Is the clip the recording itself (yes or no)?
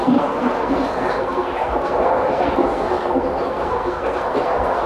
no